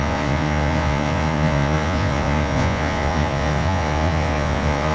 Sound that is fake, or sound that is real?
fake